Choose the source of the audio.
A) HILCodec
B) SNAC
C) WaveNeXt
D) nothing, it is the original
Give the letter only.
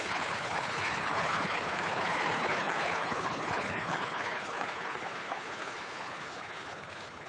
A